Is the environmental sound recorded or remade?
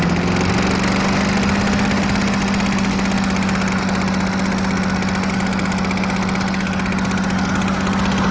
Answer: recorded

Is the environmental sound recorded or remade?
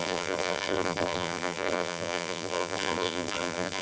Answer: remade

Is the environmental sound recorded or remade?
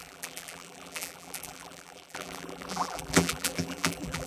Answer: remade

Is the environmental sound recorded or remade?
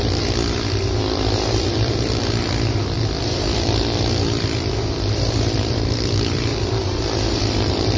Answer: remade